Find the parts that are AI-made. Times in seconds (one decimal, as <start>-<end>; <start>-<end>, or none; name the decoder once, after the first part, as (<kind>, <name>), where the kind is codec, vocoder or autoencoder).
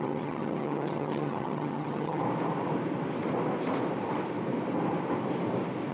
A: 0.0-2.2 (vocoder, HiFi-GAN)